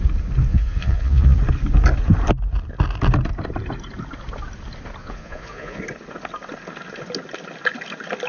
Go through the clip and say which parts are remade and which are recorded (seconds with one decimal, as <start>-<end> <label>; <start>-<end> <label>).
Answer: 0.0-0.5 recorded; 0.5-1.4 remade; 1.4-5.0 recorded; 5.0-5.8 remade; 5.8-8.3 recorded